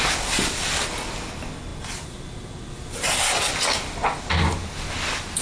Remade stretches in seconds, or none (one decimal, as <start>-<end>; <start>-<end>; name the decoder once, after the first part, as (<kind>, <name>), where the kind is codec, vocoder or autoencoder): none